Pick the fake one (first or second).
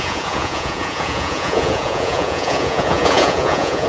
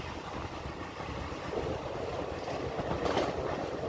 first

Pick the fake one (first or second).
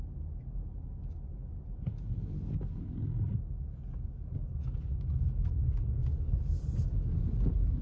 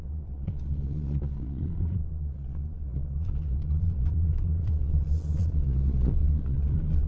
second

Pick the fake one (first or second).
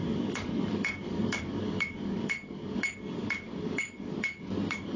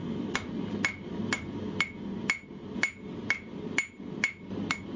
first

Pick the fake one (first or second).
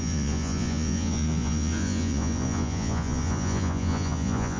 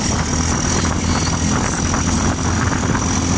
first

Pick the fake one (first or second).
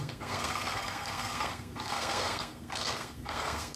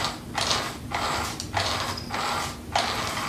first